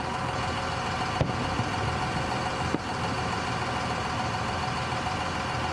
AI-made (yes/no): no